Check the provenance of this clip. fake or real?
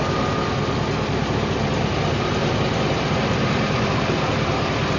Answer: real